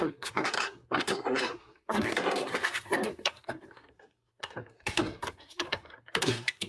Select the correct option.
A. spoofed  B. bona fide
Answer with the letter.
A